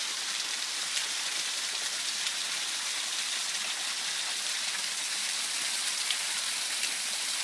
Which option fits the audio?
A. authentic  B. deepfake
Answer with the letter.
A